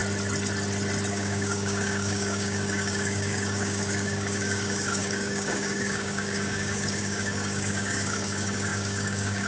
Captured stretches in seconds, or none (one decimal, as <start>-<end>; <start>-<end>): 0.0-1.1